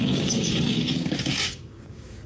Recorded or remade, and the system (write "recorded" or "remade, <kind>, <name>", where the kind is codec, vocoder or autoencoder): remade, codec, DAC